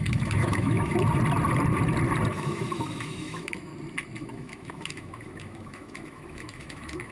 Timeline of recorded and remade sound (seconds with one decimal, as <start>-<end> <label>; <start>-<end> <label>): 0.0-0.9 remade; 0.9-2.3 recorded; 2.3-3.7 remade; 3.7-4.2 recorded; 4.2-7.1 remade